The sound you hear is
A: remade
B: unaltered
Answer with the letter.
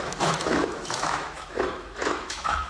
A